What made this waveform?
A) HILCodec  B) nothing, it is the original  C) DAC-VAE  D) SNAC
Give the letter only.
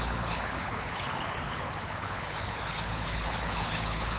A